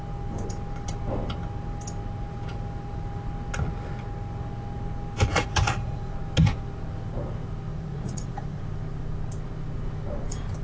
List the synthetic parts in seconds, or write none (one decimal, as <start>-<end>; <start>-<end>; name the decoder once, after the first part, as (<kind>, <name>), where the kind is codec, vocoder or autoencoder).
5.4-6.1 (vocoder, Vocos); 7.7-8.6